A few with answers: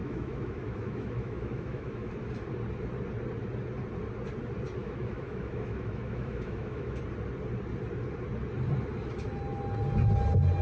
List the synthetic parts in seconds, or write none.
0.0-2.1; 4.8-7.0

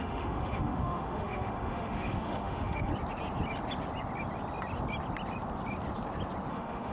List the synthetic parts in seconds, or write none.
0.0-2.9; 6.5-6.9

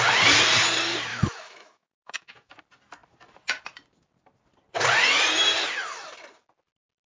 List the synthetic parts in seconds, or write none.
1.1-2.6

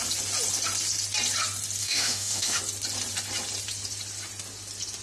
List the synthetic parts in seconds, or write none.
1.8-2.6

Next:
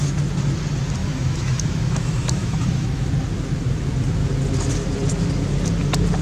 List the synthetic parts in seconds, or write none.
1.0-3.1